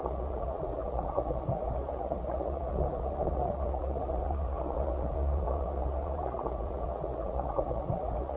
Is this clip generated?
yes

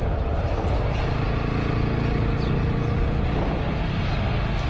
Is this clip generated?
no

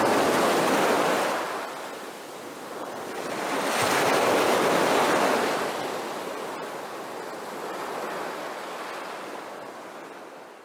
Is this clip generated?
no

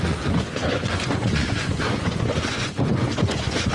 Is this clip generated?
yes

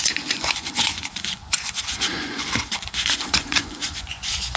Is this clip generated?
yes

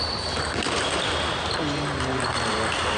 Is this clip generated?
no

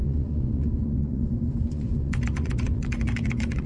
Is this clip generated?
yes